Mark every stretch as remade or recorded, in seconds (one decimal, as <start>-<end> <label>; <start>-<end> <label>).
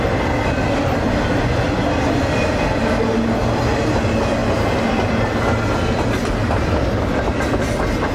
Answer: 0.0-8.1 recorded